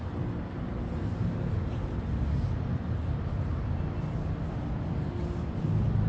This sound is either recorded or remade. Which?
recorded